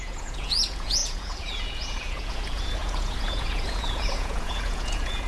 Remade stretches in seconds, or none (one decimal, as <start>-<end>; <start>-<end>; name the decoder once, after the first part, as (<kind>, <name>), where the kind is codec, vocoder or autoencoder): 0.0-5.3 (vocoder, Vocos)